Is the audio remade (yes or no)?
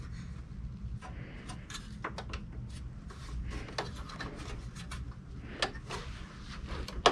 no